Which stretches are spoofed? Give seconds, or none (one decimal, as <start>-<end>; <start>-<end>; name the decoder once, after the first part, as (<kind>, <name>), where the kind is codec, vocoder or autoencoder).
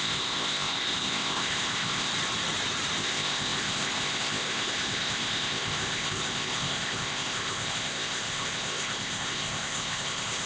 0.0-2.1 (codec, ZipCodec); 3.0-10.5